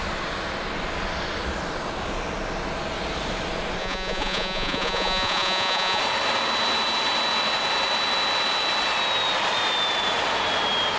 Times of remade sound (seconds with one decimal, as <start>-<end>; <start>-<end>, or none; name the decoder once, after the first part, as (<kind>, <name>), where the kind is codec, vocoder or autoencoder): 3.8-6.0 (vocoder, Vocos)